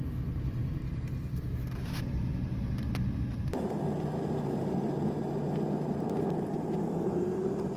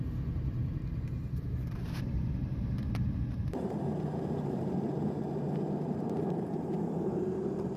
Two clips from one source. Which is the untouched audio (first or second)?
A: first